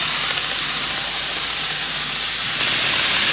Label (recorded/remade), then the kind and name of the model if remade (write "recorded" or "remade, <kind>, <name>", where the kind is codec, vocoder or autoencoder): recorded